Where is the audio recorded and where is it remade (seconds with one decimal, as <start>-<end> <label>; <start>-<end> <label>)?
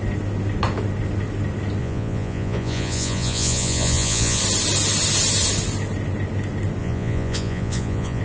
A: 0.0-1.8 recorded; 1.8-4.4 remade; 4.4-6.8 recorded; 6.8-8.2 remade